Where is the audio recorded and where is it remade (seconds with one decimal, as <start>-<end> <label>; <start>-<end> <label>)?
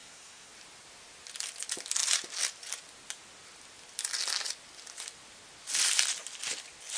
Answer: 0.0-0.5 remade; 0.5-7.0 recorded